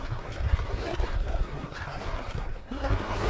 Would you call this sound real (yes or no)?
no